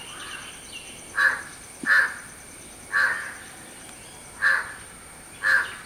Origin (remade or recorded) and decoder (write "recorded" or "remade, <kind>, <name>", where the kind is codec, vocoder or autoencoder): recorded